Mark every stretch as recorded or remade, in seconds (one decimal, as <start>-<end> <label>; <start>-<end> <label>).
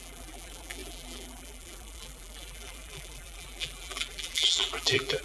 0.0-5.2 remade